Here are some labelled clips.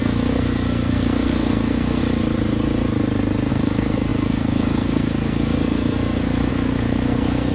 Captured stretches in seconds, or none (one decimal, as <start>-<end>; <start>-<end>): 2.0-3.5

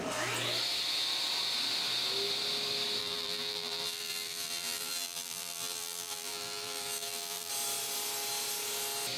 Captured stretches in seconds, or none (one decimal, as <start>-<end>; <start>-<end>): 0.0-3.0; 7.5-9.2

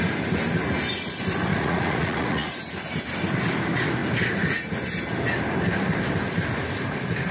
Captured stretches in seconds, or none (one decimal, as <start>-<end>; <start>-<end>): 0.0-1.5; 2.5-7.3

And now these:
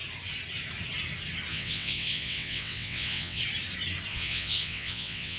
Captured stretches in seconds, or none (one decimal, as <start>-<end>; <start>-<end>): 0.0-1.5; 3.4-4.1